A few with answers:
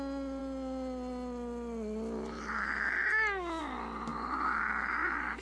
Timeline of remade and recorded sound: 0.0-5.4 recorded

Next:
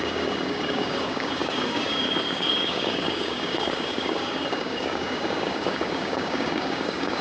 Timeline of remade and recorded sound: 0.0-7.2 remade